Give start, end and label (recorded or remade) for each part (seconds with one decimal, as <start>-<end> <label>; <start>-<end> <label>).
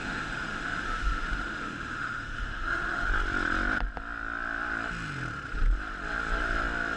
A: 0.0-3.1 remade; 3.1-7.0 recorded